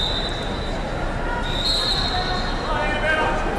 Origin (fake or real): real